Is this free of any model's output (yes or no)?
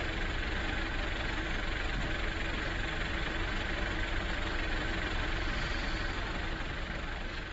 yes